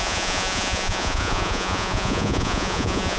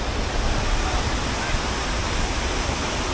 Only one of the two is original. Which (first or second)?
second